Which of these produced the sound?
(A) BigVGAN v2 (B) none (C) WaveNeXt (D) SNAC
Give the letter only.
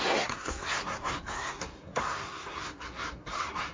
D